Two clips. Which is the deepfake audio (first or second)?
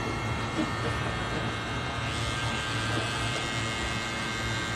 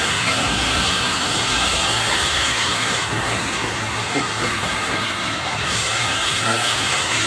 second